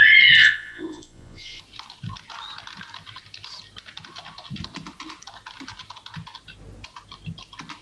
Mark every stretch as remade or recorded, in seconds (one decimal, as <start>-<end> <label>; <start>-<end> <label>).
0.0-0.4 recorded; 0.4-1.6 remade; 1.6-7.8 recorded